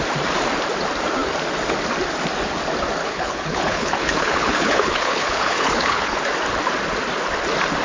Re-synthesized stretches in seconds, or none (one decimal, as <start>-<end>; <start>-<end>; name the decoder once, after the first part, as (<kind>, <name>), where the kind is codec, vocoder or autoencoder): 3.0-6.2 (codec, HILCodec)